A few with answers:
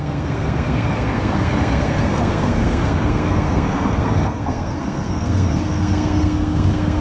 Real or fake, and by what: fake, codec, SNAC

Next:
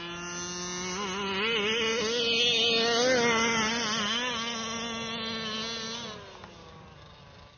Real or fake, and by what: real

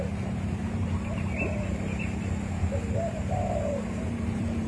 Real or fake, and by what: fake, vocoder, BigVGAN v2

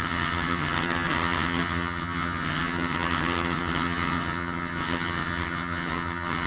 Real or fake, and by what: fake, vocoder, HiFi-GAN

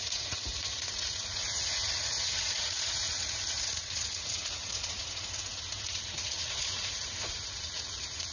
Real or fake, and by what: fake, vocoder, Vocos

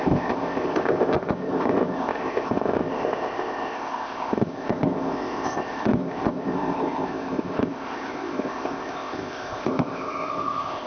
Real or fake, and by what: fake, codec, ZipCodec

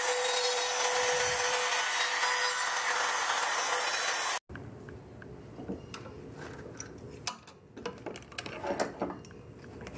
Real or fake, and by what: real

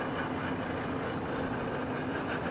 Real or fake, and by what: real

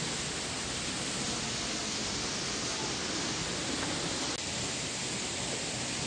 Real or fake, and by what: real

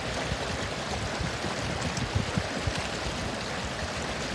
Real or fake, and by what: real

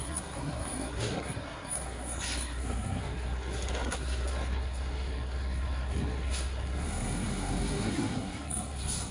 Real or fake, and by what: fake, codec, SNAC